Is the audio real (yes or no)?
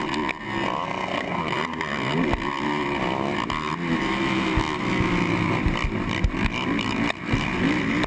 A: yes